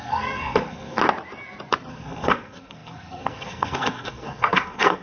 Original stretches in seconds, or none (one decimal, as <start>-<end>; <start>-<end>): 1.0-1.9